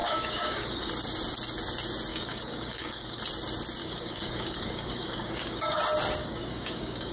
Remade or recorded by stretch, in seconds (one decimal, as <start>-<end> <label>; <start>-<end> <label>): 0.0-0.9 remade; 0.9-2.1 recorded; 2.1-3.2 remade; 3.2-3.8 recorded; 3.8-5.8 remade; 5.8-6.2 recorded; 6.2-7.1 remade